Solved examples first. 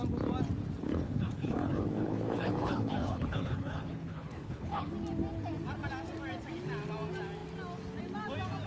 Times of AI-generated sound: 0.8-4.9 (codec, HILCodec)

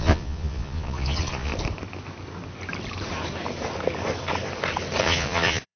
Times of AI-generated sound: 0.0-1.5 (vocoder, Vocos); 5.0-5.8

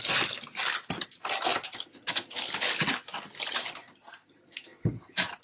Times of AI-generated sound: none

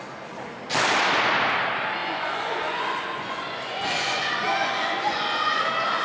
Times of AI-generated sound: 2.0-5.6 (vocoder, Vocos)

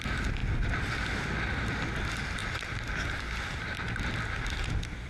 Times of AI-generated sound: 2.4-5.1 (vocoder, BigVGAN v2)

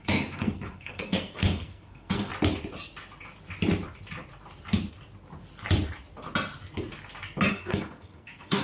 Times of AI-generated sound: 0.0-2.3 (codec, SNAC); 7.5-8.6